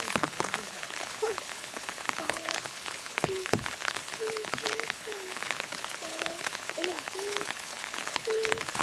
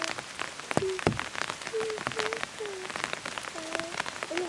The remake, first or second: first